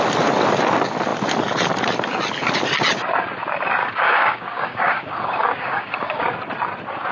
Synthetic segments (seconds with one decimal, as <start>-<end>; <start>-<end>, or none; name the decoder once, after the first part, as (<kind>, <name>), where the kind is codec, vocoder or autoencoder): 3.8-6.2 (codec, DAC)